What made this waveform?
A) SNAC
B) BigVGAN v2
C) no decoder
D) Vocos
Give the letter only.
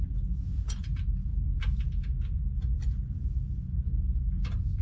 C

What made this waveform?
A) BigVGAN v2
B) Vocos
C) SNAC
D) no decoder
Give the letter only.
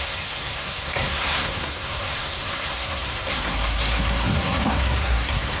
C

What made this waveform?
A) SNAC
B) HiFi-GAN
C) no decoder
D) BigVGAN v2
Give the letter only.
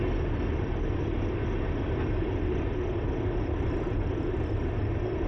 C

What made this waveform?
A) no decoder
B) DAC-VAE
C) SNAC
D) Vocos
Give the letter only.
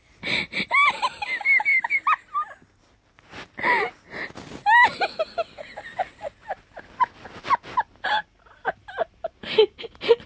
A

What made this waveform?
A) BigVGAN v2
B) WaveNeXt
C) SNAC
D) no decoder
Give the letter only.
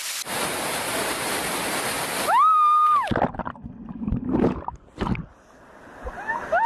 D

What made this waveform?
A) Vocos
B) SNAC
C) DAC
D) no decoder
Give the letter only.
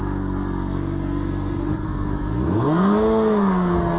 B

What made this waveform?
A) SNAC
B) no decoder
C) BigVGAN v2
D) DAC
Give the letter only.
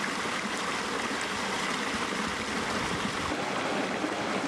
B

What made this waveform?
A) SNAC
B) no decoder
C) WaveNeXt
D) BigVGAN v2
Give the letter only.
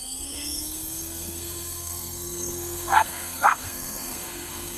A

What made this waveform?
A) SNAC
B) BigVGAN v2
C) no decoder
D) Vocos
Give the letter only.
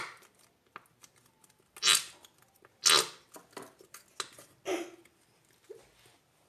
C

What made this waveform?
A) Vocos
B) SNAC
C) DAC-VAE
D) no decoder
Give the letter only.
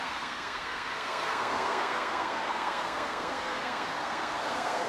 B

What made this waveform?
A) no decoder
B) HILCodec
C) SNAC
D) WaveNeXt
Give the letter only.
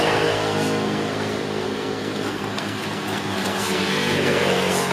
C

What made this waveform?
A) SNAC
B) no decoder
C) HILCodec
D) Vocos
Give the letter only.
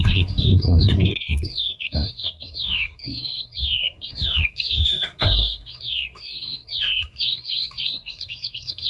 A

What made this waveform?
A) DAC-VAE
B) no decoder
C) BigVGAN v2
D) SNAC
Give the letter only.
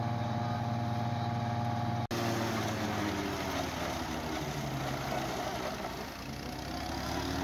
B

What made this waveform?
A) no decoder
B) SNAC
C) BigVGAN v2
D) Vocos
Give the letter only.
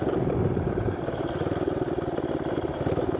A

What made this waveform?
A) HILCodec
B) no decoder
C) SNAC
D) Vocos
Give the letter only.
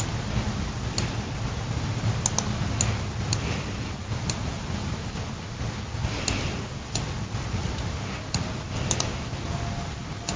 B